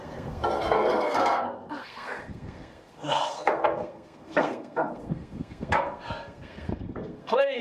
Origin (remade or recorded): remade